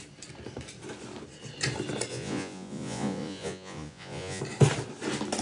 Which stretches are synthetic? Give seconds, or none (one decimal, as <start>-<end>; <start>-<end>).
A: 2.1-4.4